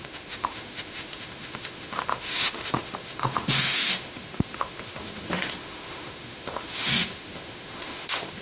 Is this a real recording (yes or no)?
no